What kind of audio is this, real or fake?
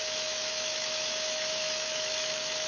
fake